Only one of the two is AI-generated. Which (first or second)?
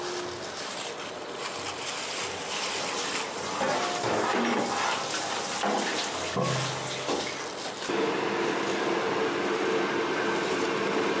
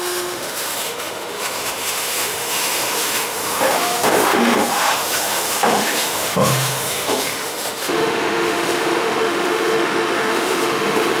second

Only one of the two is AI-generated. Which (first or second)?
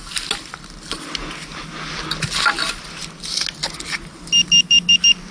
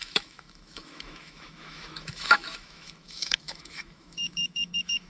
second